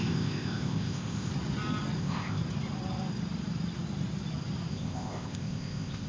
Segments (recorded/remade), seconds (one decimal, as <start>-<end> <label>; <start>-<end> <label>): 0.0-1.3 remade; 1.3-2.0 recorded; 2.0-2.4 remade; 2.4-4.7 recorded; 4.7-6.1 remade